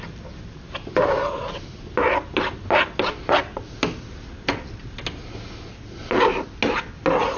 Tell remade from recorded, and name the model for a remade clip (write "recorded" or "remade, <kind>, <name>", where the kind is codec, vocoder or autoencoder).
recorded